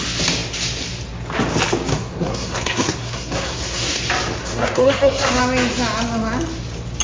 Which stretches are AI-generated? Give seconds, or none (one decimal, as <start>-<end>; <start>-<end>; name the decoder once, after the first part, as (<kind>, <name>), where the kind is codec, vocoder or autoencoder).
1.9-4.0 (codec, SNAC); 4.4-5.4